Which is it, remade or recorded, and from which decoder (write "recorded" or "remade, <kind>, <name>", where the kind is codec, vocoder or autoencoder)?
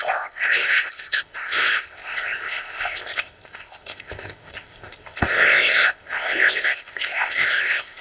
remade, codec, ZipCodec